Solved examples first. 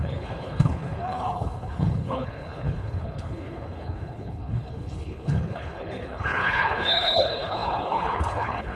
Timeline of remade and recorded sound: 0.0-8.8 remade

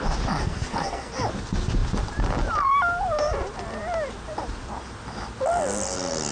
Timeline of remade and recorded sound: 0.0-0.4 recorded; 0.4-1.1 remade; 1.1-6.3 recorded

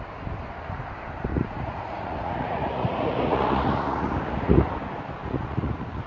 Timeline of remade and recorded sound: 0.0-1.3 recorded; 1.3-4.7 remade; 4.7-5.2 recorded; 5.2-6.1 remade

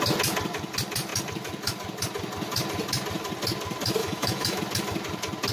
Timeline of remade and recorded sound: 0.0-4.0 recorded; 4.0-4.6 remade; 4.6-5.5 recorded

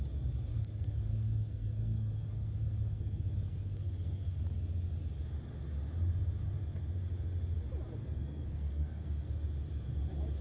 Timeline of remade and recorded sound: 0.0-0.5 recorded; 0.5-4.4 remade; 4.4-8.0 recorded; 8.0-9.3 remade; 9.3-10.4 recorded